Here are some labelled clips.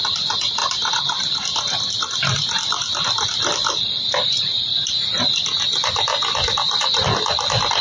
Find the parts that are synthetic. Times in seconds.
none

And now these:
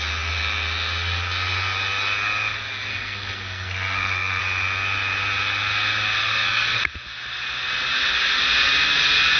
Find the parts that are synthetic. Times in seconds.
2.9-4.4 (codec, SNAC); 6.2-6.8

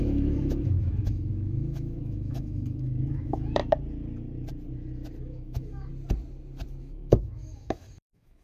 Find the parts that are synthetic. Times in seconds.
0.0-3.6 (autoencoder, DAC-VAE); 5.2-5.9; 6.8-8.4

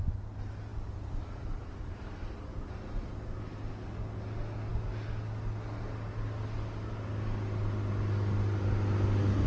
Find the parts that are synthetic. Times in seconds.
0.7-3.1 (vocoder, BigVGAN v2)